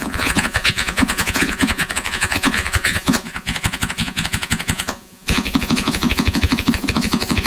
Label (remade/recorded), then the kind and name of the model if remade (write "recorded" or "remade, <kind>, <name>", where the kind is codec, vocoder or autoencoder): remade, vocoder, Vocos